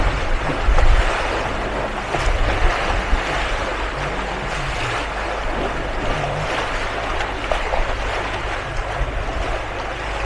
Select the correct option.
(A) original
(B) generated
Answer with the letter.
A